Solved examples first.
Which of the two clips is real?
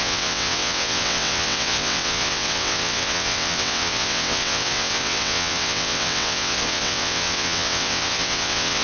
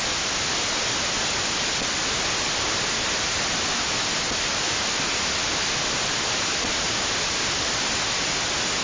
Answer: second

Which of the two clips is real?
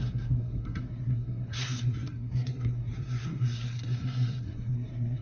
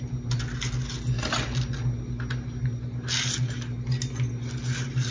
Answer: second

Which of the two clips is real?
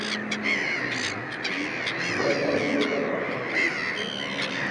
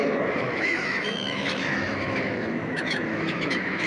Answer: first